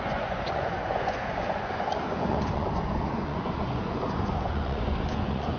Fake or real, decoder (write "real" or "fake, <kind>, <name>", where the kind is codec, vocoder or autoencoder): fake, vocoder, Vocos